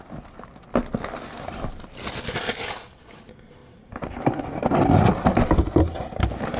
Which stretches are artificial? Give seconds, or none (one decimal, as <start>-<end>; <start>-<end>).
none